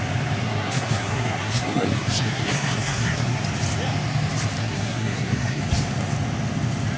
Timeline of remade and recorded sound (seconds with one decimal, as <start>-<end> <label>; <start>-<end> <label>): 0.0-0.4 recorded; 0.4-3.4 remade; 3.4-4.6 recorded; 4.6-5.6 remade; 5.6-7.0 recorded

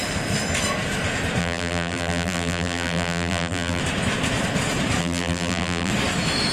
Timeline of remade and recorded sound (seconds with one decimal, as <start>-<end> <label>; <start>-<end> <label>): 0.0-1.4 recorded; 1.4-3.8 remade; 3.8-5.0 recorded; 5.0-5.9 remade; 5.9-6.5 recorded

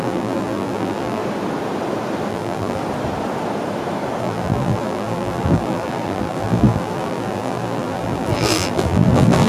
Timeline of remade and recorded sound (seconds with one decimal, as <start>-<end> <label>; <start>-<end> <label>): 0.0-1.2 remade; 1.2-2.3 recorded; 2.3-2.8 remade; 2.8-4.2 recorded; 4.2-9.5 remade

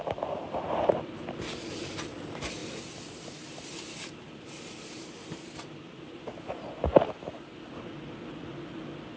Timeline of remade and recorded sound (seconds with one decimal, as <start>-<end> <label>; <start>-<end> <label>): 0.0-2.6 recorded; 2.6-6.5 remade; 6.5-9.2 recorded

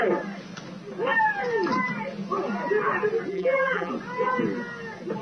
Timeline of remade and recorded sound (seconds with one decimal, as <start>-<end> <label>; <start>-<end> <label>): 0.0-3.3 recorded; 3.3-3.9 remade; 3.9-5.2 recorded

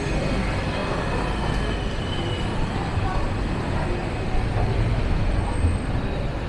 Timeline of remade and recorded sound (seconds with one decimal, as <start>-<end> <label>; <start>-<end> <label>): 0.0-4.0 recorded; 4.0-5.3 remade; 5.3-6.5 recorded

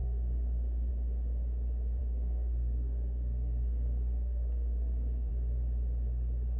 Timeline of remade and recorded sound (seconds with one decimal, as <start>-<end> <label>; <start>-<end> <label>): 0.0-0.9 remade; 0.9-2.0 recorded; 2.0-5.3 remade; 5.3-6.6 recorded